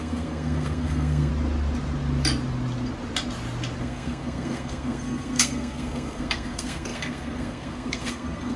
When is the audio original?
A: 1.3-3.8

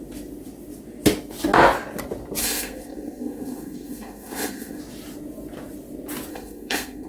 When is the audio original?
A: 0.0-2.4; 4.8-6.3

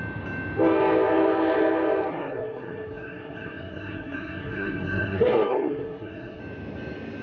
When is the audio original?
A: 0.0-2.1; 6.4-7.2

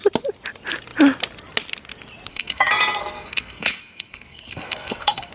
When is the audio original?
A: 0.0-2.3